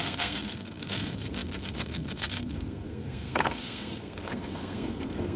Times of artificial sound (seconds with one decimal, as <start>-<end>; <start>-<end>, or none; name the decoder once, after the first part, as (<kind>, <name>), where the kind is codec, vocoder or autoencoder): 0.0-5.4 (codec, SNAC)